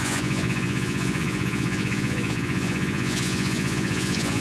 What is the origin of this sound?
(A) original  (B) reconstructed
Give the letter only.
B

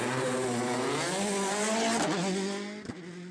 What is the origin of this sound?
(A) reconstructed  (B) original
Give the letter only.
B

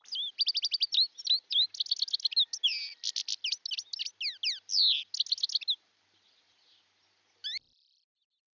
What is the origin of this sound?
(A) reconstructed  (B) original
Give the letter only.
B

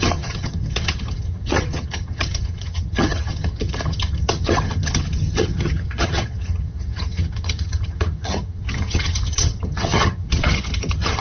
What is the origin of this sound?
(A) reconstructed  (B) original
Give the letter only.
A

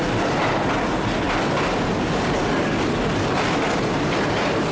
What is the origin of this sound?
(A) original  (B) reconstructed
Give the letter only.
A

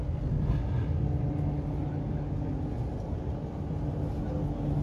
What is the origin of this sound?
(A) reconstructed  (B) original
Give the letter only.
B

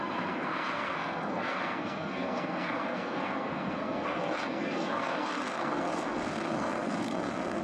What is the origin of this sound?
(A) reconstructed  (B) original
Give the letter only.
A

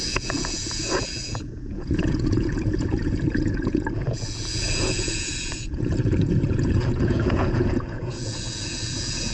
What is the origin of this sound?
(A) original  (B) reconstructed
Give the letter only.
B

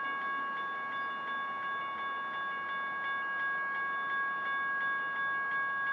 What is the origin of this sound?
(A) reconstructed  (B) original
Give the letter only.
B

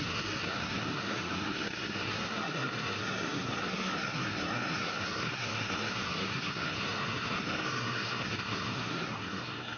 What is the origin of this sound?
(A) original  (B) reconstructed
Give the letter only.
B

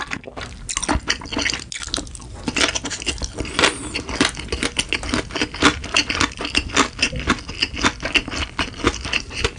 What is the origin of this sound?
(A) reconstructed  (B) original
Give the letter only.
B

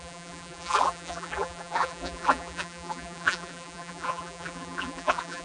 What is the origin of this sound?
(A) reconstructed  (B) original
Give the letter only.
A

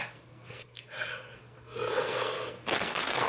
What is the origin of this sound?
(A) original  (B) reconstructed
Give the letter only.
B